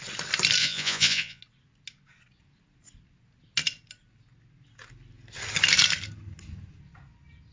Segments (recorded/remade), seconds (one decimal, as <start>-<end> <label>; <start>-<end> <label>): 0.0-0.6 recorded; 0.6-1.4 remade; 1.4-7.5 recorded